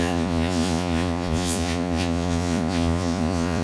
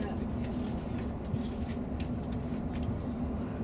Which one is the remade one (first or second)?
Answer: first